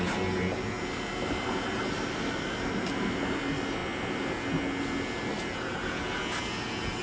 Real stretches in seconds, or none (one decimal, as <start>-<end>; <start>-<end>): 0.0-7.0